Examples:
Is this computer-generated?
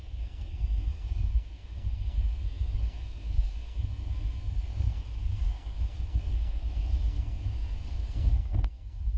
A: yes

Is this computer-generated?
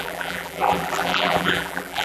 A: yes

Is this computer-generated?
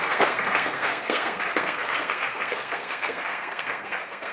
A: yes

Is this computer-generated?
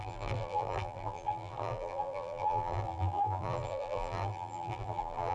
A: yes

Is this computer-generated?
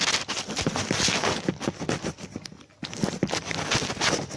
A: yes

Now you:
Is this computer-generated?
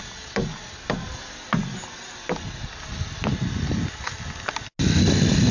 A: no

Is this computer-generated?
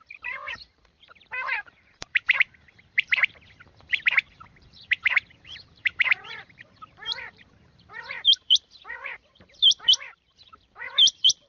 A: yes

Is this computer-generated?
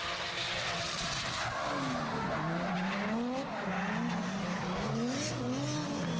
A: no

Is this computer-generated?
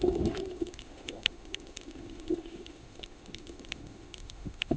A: yes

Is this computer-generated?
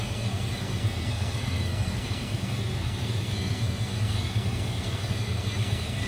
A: yes